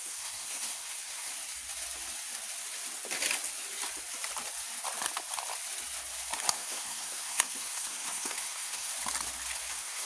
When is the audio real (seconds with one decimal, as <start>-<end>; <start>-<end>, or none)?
1.3-6.5; 8.9-9.7